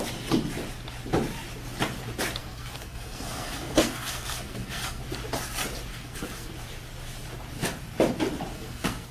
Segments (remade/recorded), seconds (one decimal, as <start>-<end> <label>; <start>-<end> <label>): 0.0-2.4 recorded; 2.4-5.0 remade; 5.0-5.9 recorded; 5.9-6.5 remade; 6.5-8.5 recorded; 8.5-9.1 remade